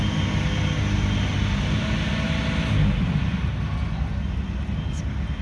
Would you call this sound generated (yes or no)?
no